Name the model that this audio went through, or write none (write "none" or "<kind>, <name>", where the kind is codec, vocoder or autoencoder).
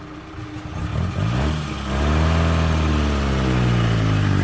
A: none